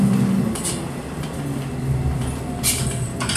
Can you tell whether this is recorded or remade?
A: recorded